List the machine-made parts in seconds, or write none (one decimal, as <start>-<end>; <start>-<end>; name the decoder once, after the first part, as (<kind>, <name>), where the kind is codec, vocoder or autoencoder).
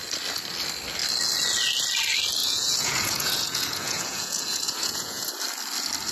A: 2.4-5.3 (vocoder, Vocos)